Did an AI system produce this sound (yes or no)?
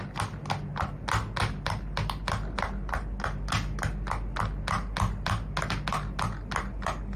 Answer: no